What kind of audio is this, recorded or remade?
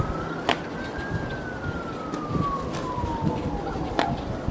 recorded